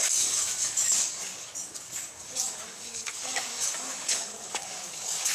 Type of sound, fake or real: fake